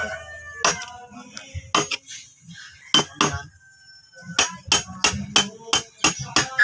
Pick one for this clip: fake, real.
real